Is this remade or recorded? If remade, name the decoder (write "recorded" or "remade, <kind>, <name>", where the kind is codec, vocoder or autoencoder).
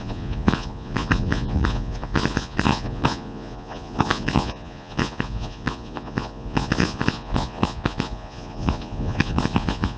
remade, vocoder, Vocos